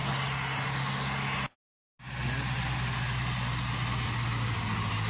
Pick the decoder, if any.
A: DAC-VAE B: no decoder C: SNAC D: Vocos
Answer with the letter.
B